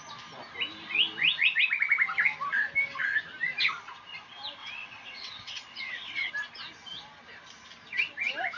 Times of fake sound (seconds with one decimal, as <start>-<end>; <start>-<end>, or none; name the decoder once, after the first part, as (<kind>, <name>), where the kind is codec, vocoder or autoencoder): 4.6-6.3 (vocoder, WaveNeXt)

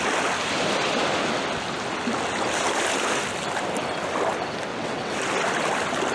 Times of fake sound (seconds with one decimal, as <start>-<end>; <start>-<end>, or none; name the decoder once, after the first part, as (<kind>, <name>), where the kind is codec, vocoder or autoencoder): 4.7-5.2 (vocoder, WaveNeXt)

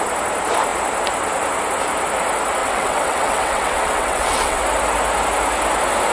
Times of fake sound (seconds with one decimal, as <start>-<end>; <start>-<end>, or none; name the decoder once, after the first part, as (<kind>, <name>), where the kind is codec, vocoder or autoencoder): 2.6-4.6 (vocoder, WaveNeXt)

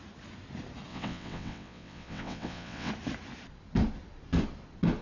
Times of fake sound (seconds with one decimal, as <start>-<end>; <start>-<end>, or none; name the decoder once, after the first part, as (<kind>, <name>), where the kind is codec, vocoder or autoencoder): 0.9-2.9 (vocoder, WaveNeXt)

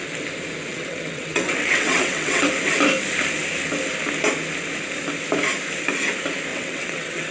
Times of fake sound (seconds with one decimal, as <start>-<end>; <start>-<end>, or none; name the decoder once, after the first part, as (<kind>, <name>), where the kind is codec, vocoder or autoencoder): 0.7-2.5 (vocoder, WaveNeXt); 6.5-7.3

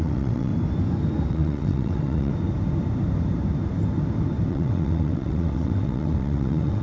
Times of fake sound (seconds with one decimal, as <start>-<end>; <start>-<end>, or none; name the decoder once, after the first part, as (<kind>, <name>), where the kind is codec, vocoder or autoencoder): 0.0-0.5 (vocoder, WaveNeXt); 1.3-2.3; 4.5-6.8

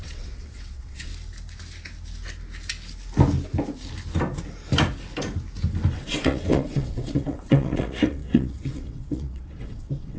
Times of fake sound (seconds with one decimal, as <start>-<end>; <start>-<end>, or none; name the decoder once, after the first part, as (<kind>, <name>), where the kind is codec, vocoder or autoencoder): 0.0-1.1 (vocoder, WaveNeXt); 5.9-10.2

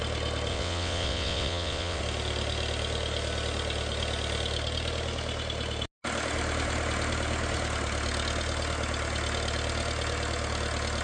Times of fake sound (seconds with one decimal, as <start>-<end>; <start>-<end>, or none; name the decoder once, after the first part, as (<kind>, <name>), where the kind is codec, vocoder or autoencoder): 0.5-2.0 (vocoder, WaveNeXt)